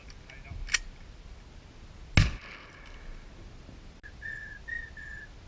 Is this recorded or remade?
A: recorded